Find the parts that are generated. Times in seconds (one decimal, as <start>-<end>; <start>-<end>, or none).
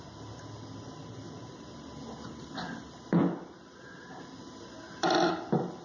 none